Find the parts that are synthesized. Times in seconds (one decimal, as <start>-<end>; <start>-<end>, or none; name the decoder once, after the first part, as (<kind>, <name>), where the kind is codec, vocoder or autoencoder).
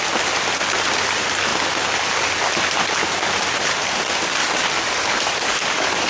4.4-6.1 (codec, DAC)